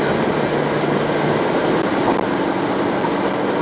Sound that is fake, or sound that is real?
real